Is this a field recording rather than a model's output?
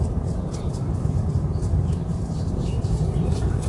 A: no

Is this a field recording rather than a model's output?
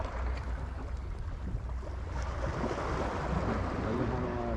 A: yes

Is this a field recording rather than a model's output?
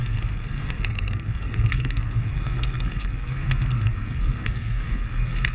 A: no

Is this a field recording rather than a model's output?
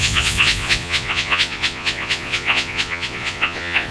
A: no